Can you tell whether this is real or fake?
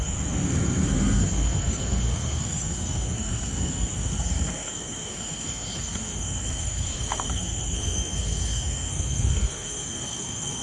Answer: fake